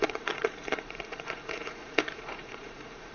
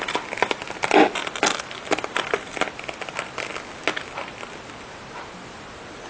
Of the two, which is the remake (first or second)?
first